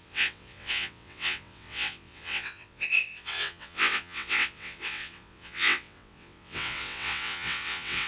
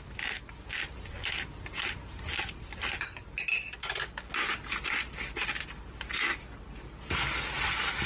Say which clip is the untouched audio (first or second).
second